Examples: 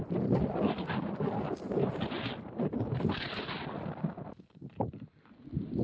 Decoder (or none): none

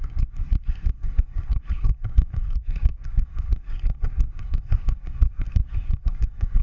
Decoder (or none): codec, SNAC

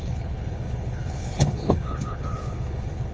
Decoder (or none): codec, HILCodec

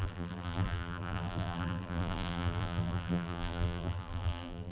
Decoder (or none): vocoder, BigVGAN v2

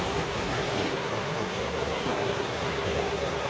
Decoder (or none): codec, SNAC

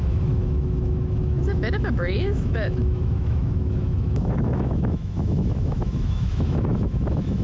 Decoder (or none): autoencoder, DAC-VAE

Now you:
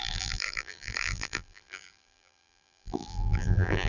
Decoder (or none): vocoder, BigVGAN v2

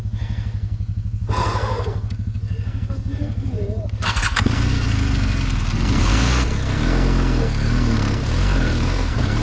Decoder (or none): codec, SNAC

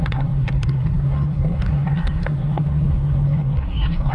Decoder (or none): codec, SNAC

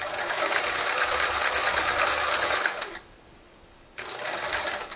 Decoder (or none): codec, DAC